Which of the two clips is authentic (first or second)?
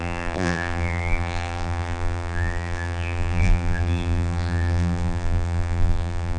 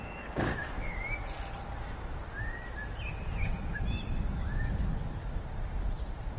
second